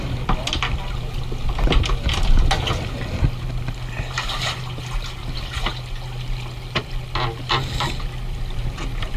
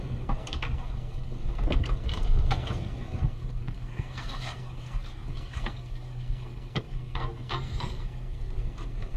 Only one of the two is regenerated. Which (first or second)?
second